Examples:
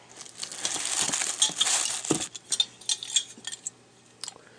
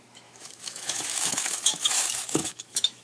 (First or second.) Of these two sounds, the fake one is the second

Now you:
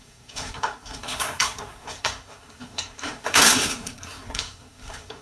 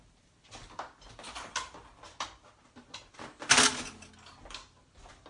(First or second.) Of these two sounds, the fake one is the first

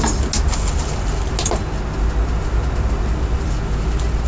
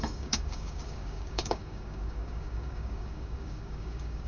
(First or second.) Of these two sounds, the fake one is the second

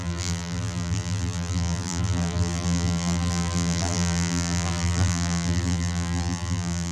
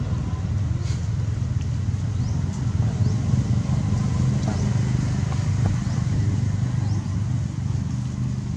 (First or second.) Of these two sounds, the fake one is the first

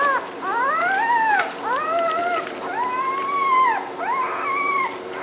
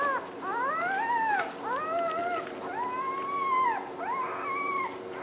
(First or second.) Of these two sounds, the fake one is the first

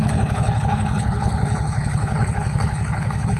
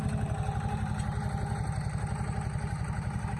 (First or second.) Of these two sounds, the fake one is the first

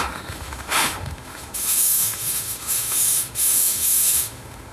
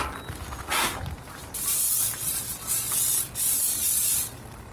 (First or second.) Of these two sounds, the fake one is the first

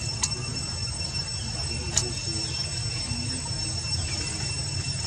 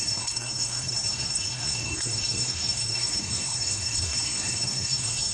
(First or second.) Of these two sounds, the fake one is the second